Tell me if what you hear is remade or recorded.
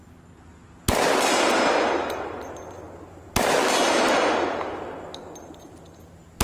recorded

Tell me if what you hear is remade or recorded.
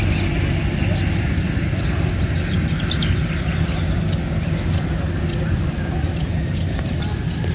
recorded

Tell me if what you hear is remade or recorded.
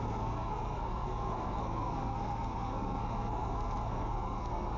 remade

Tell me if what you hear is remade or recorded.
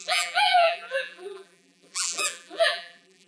remade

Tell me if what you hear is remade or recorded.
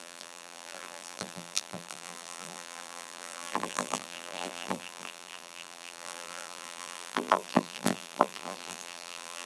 remade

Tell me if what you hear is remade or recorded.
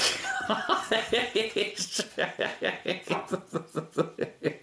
remade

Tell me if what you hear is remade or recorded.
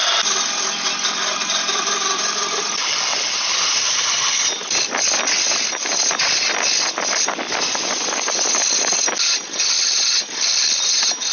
recorded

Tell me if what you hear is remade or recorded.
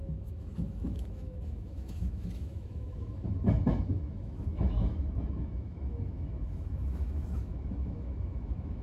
remade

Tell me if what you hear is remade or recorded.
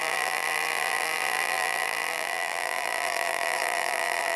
remade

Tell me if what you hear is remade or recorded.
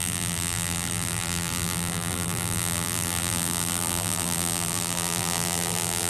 remade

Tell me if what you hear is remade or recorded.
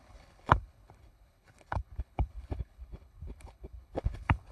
remade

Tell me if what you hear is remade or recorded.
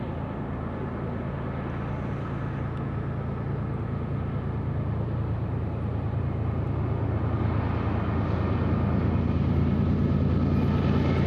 recorded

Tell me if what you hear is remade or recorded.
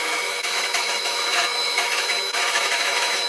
remade